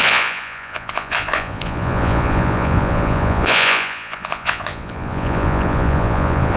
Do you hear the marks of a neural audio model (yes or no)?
yes